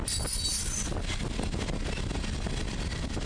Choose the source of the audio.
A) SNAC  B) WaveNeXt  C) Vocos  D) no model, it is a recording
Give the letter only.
D